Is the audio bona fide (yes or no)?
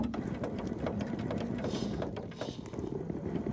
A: yes